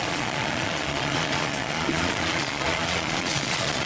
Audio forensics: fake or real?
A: fake